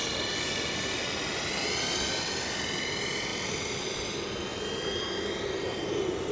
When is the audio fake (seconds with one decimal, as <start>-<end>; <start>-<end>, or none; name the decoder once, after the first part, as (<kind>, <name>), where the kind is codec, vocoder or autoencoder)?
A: 3.3-4.0 (vocoder, BigVGAN v2)